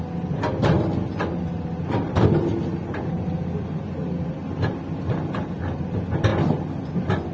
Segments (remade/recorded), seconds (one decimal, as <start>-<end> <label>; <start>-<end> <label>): 0.0-7.3 recorded